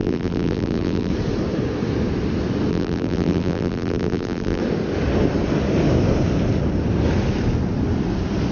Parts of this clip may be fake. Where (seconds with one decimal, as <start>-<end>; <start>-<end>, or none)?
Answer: 0.0-1.1; 2.7-4.6